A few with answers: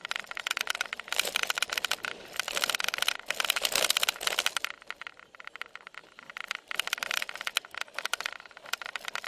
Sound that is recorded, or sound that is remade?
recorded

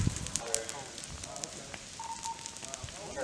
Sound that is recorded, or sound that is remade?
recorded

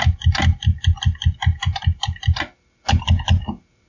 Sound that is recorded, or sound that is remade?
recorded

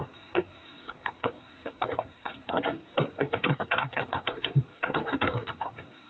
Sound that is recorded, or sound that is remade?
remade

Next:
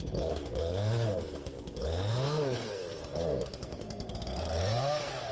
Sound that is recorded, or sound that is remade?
remade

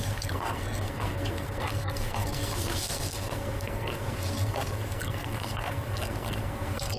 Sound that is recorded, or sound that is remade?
remade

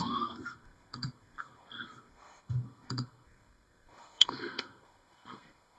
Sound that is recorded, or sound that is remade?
remade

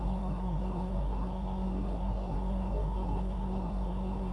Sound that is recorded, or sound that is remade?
remade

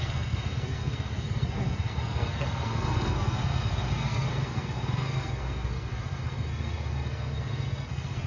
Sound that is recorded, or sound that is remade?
remade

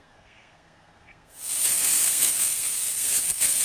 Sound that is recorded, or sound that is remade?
remade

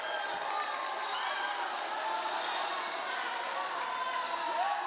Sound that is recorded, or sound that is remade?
recorded